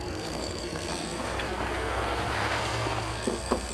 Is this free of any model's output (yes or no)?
no